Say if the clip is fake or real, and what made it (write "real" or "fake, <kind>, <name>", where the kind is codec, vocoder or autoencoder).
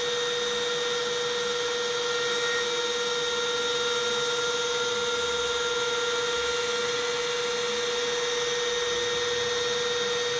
real